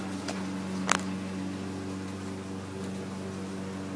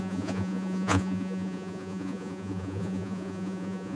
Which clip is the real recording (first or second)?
first